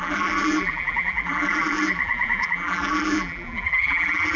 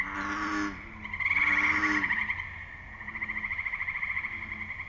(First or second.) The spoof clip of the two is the first